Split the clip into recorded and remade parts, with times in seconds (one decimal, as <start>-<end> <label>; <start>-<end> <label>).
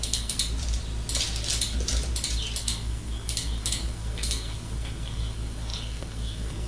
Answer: 0.0-0.4 remade; 0.4-2.6 recorded; 2.6-6.7 remade